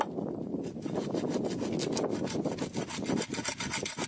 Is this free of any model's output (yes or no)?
yes